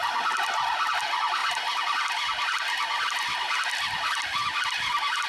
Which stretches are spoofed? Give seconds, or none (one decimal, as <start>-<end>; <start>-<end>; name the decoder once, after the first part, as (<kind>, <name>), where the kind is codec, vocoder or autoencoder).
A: none